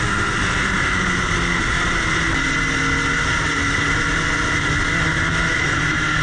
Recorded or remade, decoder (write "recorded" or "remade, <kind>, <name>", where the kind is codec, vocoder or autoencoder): recorded